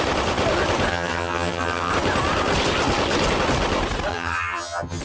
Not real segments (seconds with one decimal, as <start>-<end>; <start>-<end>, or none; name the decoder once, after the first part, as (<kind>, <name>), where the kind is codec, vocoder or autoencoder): 0.9-1.9 (vocoder, HiFi-GAN); 4.1-5.0